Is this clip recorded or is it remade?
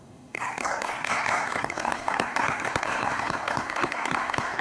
remade